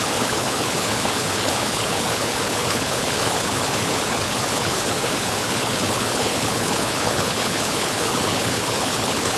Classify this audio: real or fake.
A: fake